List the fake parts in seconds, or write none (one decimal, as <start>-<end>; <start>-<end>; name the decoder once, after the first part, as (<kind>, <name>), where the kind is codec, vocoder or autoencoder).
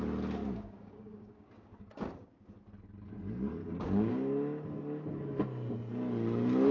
0.4-2.6 (codec, DAC); 3.6-4.1